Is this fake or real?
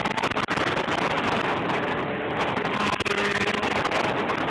real